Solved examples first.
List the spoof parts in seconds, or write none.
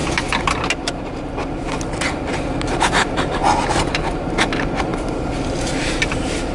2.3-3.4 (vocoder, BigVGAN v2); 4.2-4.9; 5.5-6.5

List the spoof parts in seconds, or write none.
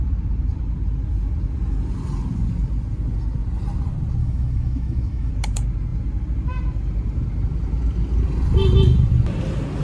4.2-5.3 (autoencoder, DAC-VAE)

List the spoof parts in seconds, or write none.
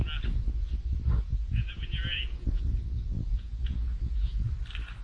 1.3-2.6 (vocoder, Vocos); 3.1-4.5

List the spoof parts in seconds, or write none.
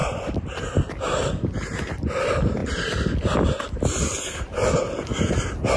0.0-1.2 (vocoder, BigVGAN v2)